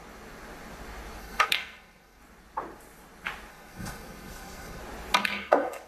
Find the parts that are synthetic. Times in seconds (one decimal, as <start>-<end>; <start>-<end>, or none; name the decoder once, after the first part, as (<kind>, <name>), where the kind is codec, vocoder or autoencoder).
1.2-2.2 (codec, SNAC); 3.5-4.8; 5.2-5.9